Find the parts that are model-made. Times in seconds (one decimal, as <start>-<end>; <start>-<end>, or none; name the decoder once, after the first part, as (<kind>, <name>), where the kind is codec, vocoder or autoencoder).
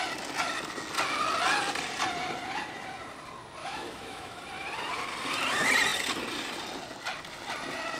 3.6-4.4 (autoencoder, DAC-VAE)